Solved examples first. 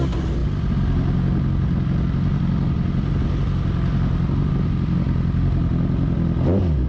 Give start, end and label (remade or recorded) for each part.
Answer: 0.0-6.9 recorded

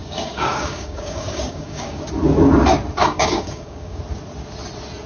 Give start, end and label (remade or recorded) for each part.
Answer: 0.0-2.0 remade; 2.0-3.0 recorded; 3.0-4.0 remade; 4.0-5.1 recorded

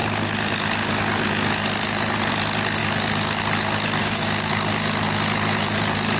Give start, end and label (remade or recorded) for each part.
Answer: 0.0-4.0 recorded; 4.0-4.5 remade; 4.5-6.2 recorded

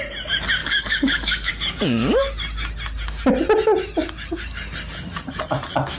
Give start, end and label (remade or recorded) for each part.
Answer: 0.0-0.6 recorded; 0.6-1.5 remade; 1.5-6.0 recorded